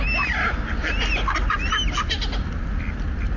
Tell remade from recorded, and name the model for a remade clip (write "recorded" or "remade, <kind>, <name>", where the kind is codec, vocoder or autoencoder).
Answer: recorded